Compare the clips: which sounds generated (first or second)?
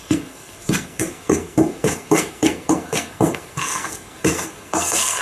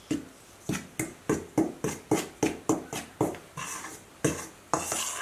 first